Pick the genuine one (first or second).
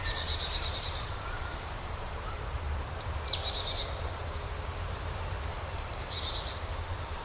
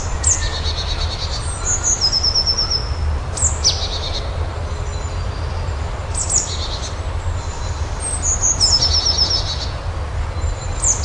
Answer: second